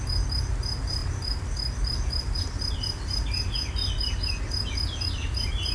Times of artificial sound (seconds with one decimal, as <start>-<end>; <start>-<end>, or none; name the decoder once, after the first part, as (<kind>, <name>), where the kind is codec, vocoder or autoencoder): none